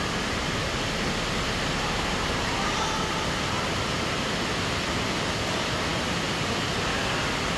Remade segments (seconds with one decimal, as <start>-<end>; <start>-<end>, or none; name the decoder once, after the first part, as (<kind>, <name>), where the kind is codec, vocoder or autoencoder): none